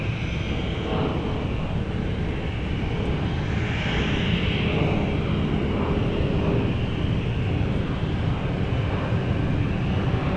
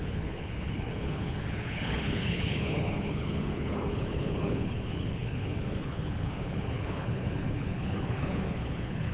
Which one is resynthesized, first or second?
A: second